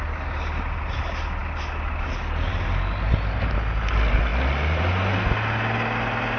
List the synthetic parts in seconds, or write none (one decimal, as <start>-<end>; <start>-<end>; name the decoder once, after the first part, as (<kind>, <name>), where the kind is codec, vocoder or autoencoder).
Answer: none